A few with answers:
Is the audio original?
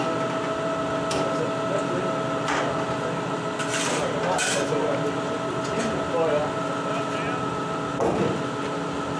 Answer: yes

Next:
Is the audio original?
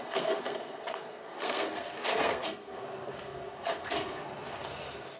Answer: no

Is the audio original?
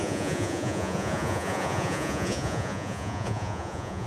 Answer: no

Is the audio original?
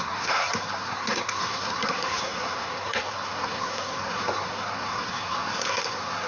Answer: no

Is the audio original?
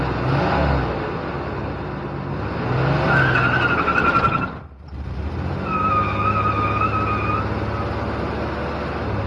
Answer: yes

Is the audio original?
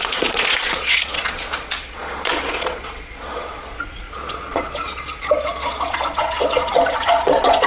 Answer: no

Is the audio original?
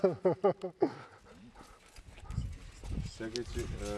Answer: yes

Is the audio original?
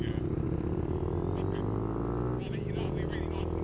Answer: yes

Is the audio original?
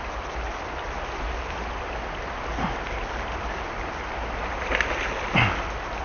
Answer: yes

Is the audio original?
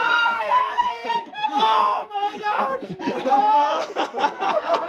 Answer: no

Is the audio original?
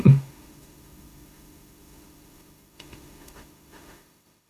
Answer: no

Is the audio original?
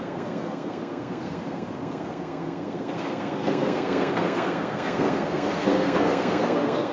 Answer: no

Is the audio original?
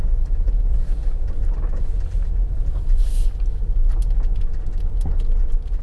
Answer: yes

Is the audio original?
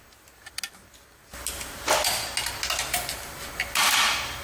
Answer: yes